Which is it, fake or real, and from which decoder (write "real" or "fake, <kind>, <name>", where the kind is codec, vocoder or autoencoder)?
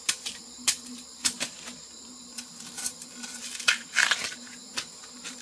fake, vocoder, BigVGAN v2